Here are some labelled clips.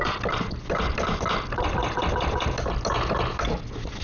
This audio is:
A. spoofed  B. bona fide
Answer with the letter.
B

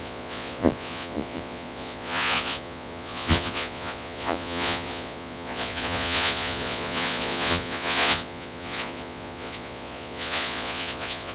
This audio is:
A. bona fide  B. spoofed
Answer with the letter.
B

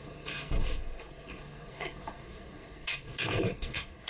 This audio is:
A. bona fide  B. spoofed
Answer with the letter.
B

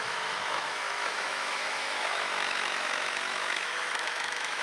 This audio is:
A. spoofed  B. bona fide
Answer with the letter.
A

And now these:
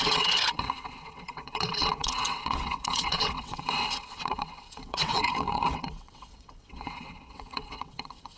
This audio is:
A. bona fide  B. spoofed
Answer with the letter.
B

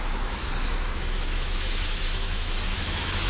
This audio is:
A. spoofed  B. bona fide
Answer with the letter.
A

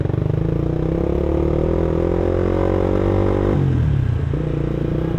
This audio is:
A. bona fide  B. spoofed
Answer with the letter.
A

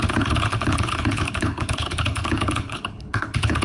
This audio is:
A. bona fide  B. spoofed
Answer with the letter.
B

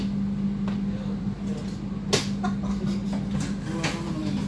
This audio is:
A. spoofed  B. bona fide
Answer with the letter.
B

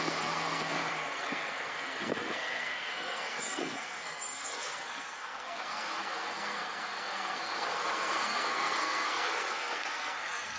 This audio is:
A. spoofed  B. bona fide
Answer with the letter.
A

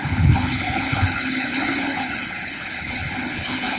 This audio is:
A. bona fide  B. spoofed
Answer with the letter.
B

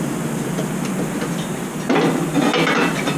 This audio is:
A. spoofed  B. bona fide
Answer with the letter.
B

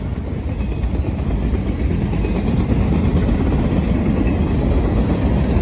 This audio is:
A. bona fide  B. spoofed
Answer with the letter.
A